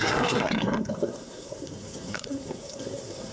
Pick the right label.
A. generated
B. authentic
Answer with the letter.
A